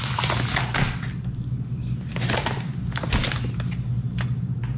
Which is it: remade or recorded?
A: recorded